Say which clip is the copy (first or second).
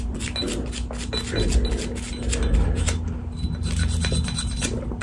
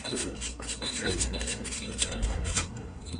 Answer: second